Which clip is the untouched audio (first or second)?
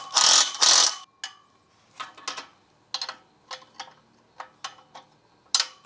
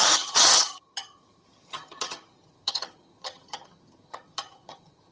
first